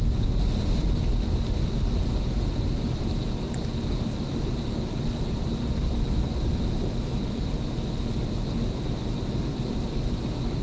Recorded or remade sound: recorded